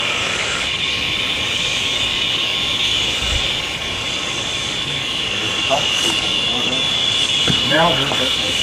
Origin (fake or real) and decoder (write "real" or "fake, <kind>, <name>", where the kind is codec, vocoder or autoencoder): fake, codec, DAC